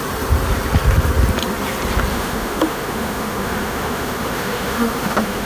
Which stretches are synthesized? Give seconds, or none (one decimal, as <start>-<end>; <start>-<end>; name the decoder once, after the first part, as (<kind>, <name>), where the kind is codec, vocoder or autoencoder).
2.1-5.5 (autoencoder, DAC-VAE)